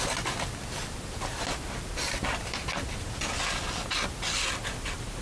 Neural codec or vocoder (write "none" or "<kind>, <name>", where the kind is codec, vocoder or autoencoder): none